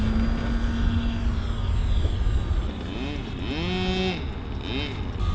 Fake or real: real